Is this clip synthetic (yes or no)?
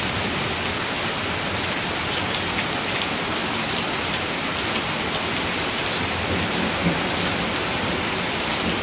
no